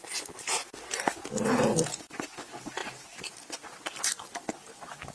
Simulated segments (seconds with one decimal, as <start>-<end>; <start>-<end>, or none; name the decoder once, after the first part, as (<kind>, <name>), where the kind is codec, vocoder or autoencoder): none

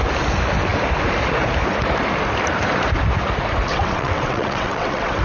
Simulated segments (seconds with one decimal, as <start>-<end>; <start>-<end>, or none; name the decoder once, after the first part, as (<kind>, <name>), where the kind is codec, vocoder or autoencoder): 3.7-5.2 (vocoder, WaveNeXt)

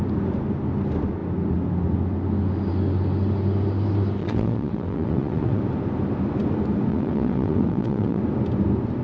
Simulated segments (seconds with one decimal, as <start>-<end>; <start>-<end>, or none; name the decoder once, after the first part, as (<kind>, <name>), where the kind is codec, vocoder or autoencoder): 4.2-5.6 (vocoder, WaveNeXt); 6.9-8.2

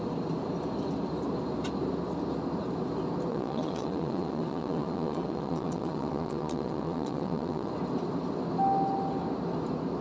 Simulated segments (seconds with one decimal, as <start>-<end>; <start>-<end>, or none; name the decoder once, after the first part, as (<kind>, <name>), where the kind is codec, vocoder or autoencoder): 3.3-7.7 (vocoder, WaveNeXt)

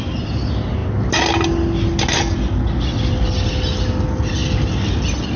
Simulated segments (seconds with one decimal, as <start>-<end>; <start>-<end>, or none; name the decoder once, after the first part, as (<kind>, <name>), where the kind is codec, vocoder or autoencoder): none